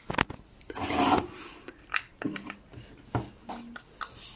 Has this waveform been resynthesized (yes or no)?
no